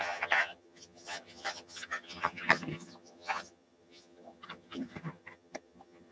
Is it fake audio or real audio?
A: fake